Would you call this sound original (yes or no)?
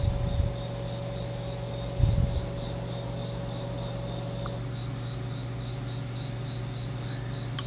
yes